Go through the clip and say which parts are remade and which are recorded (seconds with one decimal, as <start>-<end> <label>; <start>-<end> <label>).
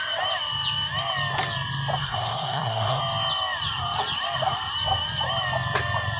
0.0-2.0 recorded; 2.0-3.0 remade; 3.0-6.2 recorded